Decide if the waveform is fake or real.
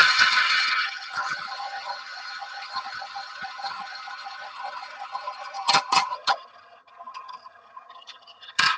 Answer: fake